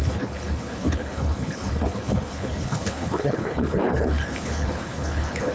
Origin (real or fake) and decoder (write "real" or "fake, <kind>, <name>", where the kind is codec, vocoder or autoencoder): fake, codec, HILCodec